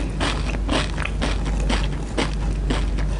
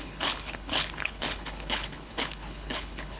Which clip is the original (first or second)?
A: first